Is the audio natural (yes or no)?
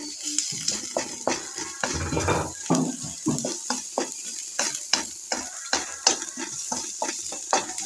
yes